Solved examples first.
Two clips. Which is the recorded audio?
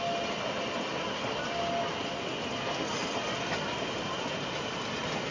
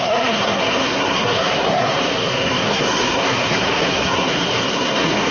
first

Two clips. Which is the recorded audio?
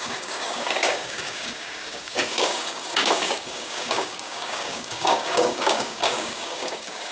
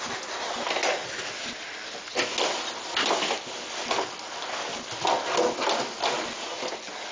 second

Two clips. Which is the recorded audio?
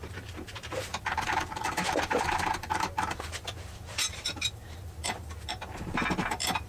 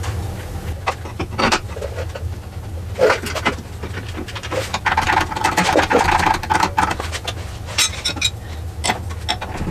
second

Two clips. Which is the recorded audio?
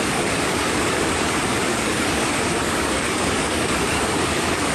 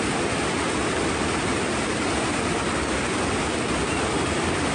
second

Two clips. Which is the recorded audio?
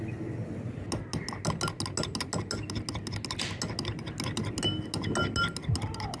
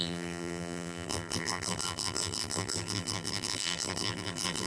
first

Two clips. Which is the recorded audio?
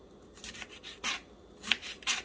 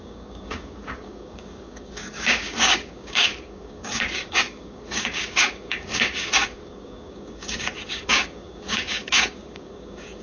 first